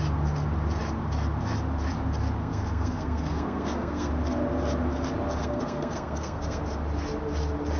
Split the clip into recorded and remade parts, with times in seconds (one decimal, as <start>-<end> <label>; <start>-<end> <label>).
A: 0.0-2.4 recorded; 2.4-4.1 remade; 4.1-5.4 recorded; 5.4-6.6 remade; 6.6-7.8 recorded